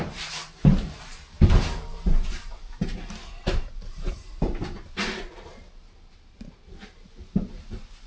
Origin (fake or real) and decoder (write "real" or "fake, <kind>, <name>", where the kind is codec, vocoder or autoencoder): fake, vocoder, BigVGAN v2